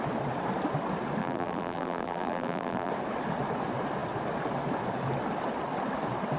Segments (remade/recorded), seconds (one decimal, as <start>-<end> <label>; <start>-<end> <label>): 0.0-1.2 recorded; 1.2-2.9 remade; 2.9-6.4 recorded